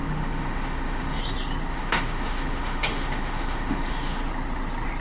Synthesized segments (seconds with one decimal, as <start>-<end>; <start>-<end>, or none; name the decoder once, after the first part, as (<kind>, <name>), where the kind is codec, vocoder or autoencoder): 0.0-1.2 (autoencoder, DAC-VAE); 1.7-4.2

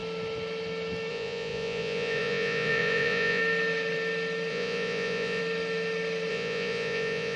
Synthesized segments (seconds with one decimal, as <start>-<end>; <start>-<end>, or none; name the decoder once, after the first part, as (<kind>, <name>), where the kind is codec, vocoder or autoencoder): 1.1-3.4 (vocoder, Vocos); 4.5-5.4; 6.3-7.4

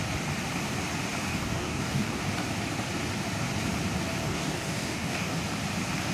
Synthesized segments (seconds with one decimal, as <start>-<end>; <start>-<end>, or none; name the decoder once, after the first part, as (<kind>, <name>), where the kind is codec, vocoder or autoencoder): 1.3-2.2 (codec, DAC); 4.2-5.4

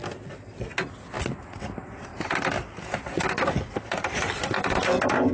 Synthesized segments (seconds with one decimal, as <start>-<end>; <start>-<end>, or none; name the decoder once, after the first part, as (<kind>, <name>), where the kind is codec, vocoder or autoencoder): none

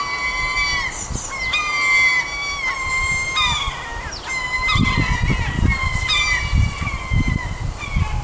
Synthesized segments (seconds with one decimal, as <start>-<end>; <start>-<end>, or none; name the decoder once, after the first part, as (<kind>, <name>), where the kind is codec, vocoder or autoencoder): none